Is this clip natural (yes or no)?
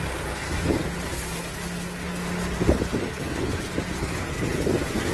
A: yes